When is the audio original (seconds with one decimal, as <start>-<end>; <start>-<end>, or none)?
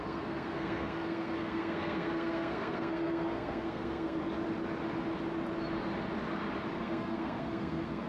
4.2-6.8